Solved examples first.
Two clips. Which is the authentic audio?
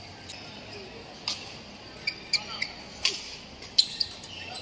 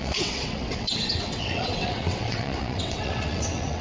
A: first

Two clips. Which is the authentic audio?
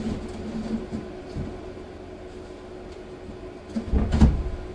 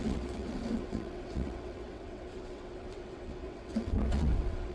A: first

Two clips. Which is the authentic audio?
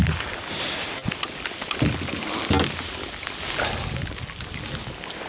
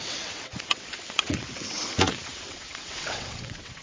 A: first